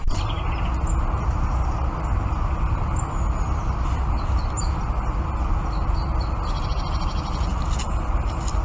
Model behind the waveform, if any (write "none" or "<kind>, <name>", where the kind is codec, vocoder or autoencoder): none